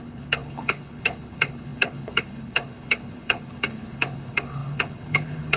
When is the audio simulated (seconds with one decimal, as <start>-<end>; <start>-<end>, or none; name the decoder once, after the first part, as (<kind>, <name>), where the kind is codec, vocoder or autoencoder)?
0.0-5.6 (codec, HILCodec)